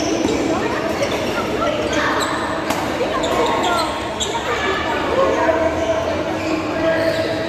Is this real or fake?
fake